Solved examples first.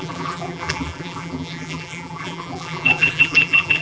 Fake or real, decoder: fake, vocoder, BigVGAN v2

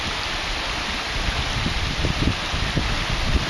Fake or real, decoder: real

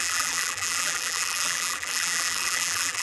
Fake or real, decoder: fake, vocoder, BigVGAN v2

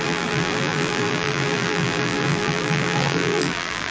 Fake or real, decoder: fake, vocoder, BigVGAN v2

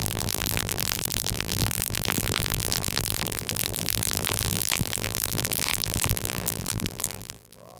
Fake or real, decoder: fake, vocoder, BigVGAN v2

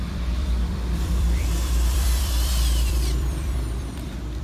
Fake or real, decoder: fake, vocoder, BigVGAN v2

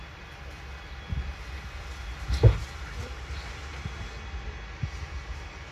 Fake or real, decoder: real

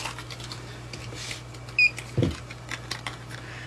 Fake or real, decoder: real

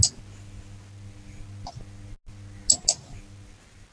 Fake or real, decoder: real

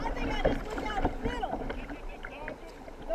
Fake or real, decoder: fake, vocoder, BigVGAN v2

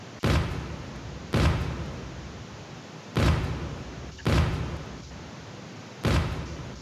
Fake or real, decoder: fake, vocoder, BigVGAN v2